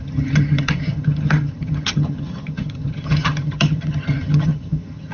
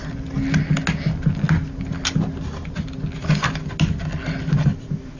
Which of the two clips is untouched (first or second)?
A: second